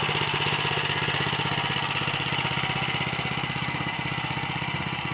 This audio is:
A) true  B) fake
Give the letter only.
A